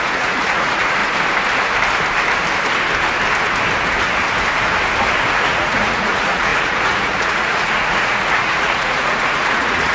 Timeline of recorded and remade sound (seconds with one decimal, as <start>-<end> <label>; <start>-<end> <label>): 0.0-1.0 remade; 1.0-5.3 recorded; 5.3-9.9 remade